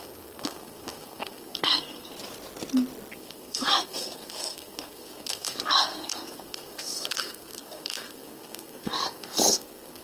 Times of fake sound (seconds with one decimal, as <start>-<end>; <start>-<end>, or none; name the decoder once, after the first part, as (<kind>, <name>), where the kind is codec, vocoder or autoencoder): 0.0-2.1 (codec, SNAC); 3.1-10.0